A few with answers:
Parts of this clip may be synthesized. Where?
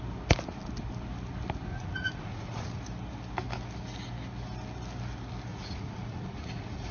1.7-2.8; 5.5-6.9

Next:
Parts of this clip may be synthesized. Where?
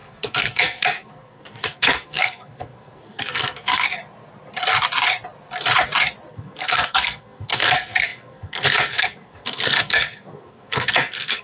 0.0-3.9; 6.3-11.4